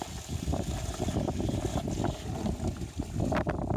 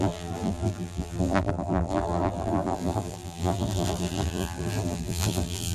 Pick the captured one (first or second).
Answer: first